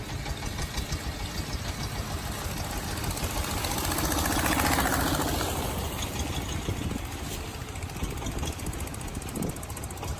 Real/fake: real